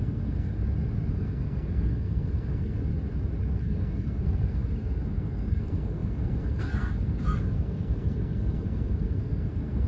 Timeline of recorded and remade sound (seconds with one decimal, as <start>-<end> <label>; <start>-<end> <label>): 0.0-0.6 remade; 0.6-1.1 recorded; 1.1-2.9 remade; 2.9-3.5 recorded; 3.5-9.9 remade